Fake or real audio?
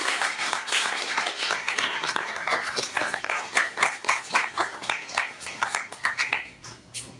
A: fake